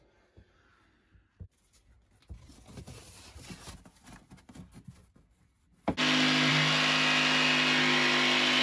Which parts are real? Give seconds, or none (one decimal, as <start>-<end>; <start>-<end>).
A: 0.0-8.6